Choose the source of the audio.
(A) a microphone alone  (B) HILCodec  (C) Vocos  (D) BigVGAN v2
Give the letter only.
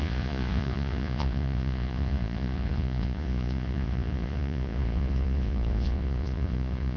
C